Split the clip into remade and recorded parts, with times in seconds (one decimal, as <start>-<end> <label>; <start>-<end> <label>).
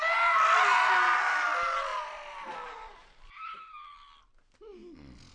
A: 0.0-1.9 recorded; 1.9-4.2 remade; 4.2-5.3 recorded